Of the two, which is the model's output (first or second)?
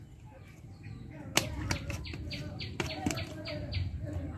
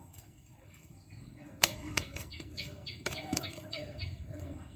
second